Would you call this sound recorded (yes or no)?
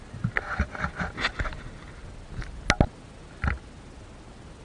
yes